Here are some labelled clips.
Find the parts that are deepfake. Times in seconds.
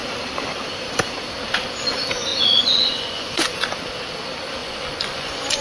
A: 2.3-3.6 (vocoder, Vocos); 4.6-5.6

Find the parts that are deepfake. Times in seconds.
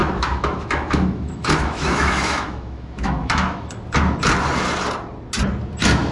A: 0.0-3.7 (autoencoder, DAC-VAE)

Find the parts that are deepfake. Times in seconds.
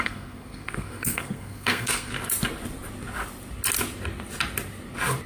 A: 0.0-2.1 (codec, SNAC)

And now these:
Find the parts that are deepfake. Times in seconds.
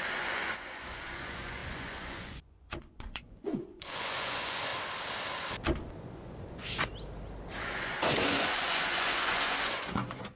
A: 0.0-4.7 (vocoder, Vocos); 6.0-6.9; 7.6-10.4